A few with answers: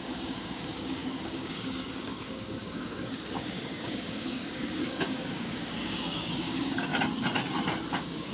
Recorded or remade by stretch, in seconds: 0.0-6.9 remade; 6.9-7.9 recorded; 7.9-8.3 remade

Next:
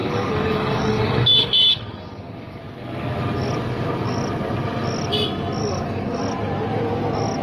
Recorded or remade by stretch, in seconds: 0.0-2.6 remade; 2.6-5.6 recorded; 5.6-6.2 remade; 6.2-7.4 recorded

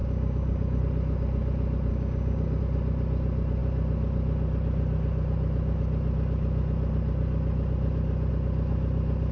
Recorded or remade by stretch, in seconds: 0.0-0.8 remade; 0.8-1.9 recorded; 1.9-2.6 remade; 2.6-9.3 recorded

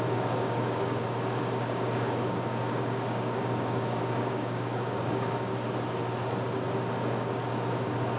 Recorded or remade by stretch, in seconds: 0.0-5.5 remade; 5.5-7.7 recorded; 7.7-8.2 remade

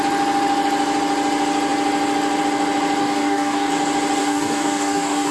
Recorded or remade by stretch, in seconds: 0.0-3.0 recorded; 3.0-3.7 remade; 3.7-4.2 recorded; 4.2-5.3 remade